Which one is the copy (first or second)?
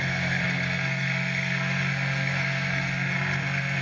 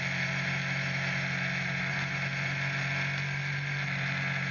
first